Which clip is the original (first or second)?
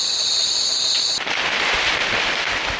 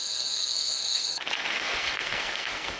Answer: first